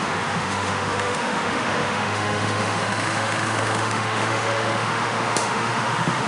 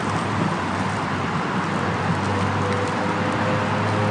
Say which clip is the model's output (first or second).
first